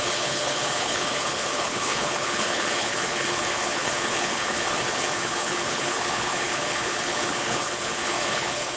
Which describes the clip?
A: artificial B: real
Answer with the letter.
A